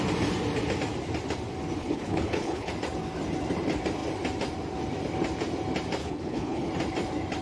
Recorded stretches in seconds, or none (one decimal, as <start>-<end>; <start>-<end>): 0.0-1.8; 2.7-6.0; 6.7-7.4